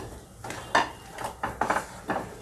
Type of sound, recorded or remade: recorded